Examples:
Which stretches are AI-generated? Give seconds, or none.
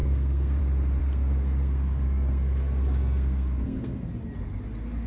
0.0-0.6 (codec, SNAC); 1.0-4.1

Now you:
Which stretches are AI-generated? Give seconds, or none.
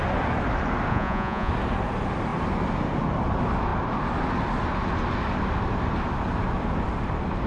0.9-1.5 (vocoder, Vocos)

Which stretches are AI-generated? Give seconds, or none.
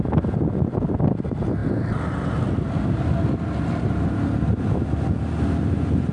none